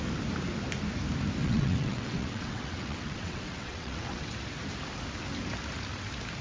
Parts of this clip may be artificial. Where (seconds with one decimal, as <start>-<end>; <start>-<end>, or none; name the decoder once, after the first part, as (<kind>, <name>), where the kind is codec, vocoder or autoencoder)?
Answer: 1.4-4.3 (vocoder, WaveNeXt)